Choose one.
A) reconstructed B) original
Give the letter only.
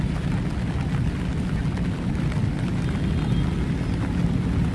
B